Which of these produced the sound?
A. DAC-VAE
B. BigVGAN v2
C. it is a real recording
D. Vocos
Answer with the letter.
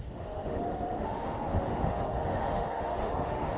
A